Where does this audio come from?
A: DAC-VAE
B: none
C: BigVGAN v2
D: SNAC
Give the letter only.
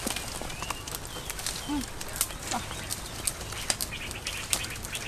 B